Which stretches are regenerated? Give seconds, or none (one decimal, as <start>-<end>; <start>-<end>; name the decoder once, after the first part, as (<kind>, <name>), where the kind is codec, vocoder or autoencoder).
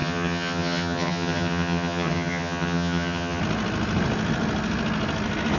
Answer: 0.0-3.4 (vocoder, HiFi-GAN)